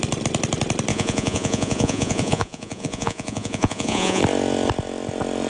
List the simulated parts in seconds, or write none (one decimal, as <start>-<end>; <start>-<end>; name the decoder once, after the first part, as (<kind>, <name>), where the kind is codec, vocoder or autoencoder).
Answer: 0.9-4.2 (vocoder, Vocos)